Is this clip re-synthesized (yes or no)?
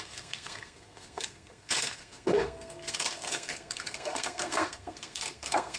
yes